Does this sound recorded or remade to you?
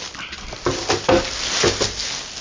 recorded